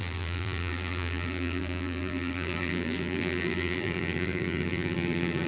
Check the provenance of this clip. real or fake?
fake